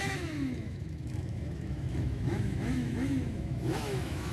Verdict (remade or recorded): remade